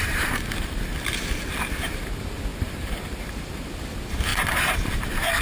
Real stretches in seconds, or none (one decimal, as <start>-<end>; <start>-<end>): 0.9-1.6